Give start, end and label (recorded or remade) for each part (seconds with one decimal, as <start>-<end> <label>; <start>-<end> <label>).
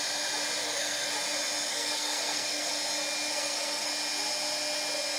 0.0-0.6 recorded; 0.6-1.1 remade; 1.1-1.7 recorded; 1.7-2.7 remade; 2.7-3.3 recorded; 3.3-3.9 remade; 3.9-5.2 recorded